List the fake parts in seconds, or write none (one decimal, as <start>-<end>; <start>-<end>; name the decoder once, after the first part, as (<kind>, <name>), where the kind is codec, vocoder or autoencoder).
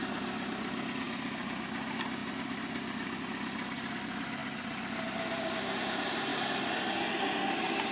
none